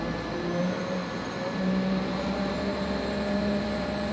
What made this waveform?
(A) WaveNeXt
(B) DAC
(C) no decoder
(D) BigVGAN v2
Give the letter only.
D